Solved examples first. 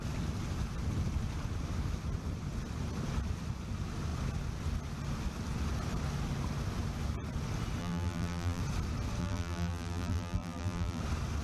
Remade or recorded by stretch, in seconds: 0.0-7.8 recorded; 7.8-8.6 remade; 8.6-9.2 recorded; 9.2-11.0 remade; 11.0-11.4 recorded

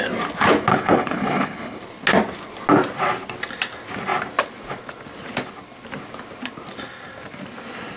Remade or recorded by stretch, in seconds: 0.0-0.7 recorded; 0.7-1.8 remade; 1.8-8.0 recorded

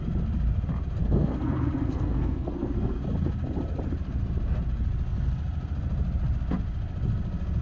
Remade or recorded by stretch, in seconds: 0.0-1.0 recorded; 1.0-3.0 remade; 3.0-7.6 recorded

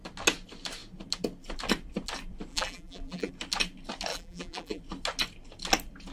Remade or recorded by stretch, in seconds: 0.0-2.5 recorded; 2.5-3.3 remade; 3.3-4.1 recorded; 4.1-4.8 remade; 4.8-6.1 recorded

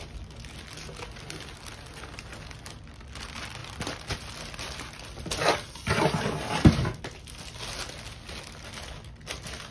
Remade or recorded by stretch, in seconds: 0.0-9.7 recorded